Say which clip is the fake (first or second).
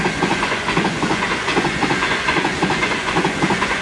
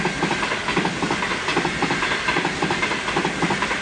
first